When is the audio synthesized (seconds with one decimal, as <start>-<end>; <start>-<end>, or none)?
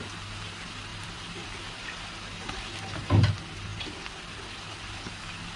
0.9-2.0